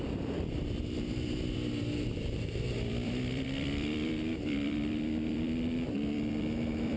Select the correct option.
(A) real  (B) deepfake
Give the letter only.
B